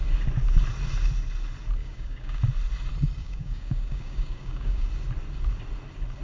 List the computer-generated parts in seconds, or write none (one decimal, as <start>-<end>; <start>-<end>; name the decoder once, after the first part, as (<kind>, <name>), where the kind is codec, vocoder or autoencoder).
1.8-2.4 (codec, DAC); 3.2-4.9